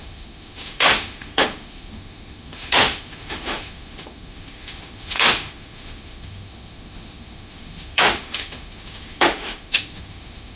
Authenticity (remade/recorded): remade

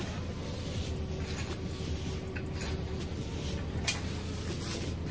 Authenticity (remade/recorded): recorded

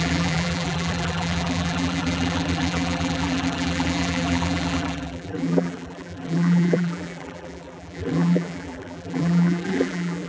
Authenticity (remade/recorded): remade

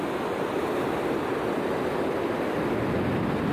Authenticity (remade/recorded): recorded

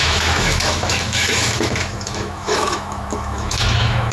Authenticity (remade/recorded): remade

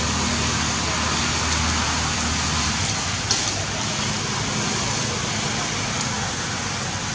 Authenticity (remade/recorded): recorded